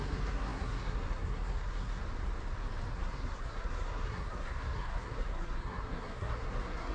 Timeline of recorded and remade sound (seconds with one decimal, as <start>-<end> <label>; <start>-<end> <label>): 0.0-2.0 remade; 2.0-2.9 recorded; 2.9-6.9 remade

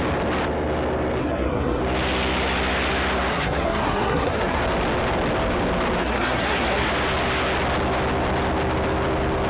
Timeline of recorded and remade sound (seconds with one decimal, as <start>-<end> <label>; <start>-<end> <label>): 0.0-1.2 recorded; 1.2-1.8 remade; 1.8-3.3 recorded; 3.3-4.6 remade; 4.6-6.0 recorded; 6.0-6.9 remade; 6.9-9.5 recorded

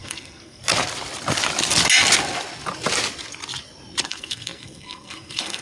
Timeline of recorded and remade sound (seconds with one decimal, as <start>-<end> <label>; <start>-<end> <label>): 0.0-0.6 remade; 0.6-4.0 recorded; 4.0-5.6 remade

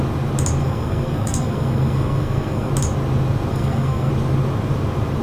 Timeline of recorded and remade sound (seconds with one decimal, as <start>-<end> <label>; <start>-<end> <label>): 0.0-0.6 recorded; 0.6-2.7 remade; 2.7-3.5 recorded; 3.5-4.1 remade; 4.1-5.2 recorded